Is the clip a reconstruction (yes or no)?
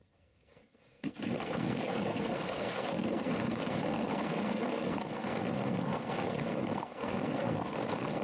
yes